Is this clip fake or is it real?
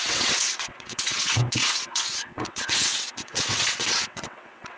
fake